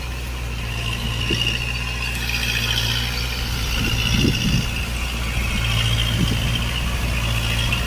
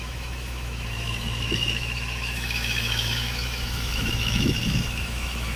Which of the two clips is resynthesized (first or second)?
second